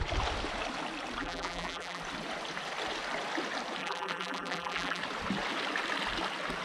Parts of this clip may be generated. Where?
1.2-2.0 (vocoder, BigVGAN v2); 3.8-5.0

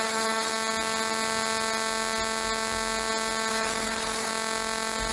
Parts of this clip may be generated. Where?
0.0-0.5 (codec, HILCodec); 3.5-4.3

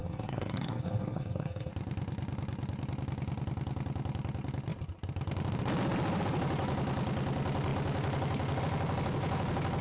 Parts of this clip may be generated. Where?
0.0-1.7 (codec, SNAC)

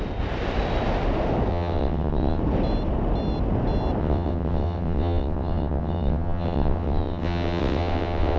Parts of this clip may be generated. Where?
1.5-2.4 (vocoder, WaveNeXt); 4.0-8.4

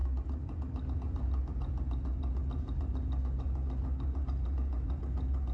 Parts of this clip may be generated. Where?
none

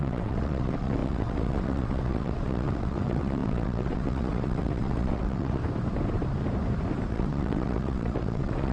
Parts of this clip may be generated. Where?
0.0-5.6 (vocoder, WaveNeXt); 7.1-8.7

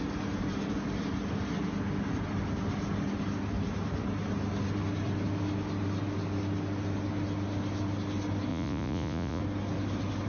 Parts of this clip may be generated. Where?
8.5-9.4 (vocoder, Vocos)